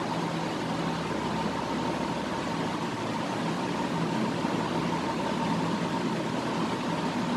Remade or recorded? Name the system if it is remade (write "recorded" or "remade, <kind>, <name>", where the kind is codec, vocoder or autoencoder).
recorded